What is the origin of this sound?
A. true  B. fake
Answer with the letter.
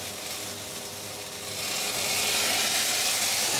A